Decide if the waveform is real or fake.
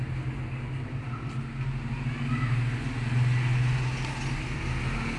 real